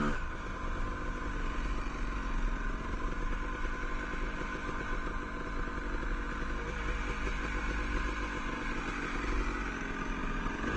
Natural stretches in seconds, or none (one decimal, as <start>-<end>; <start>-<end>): 0.0-10.2